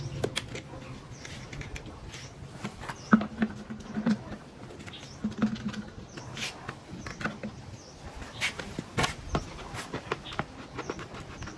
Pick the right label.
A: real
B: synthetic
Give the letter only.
A